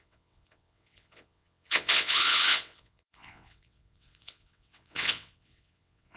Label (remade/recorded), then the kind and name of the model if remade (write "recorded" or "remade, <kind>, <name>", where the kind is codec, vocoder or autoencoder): remade, vocoder, WaveNeXt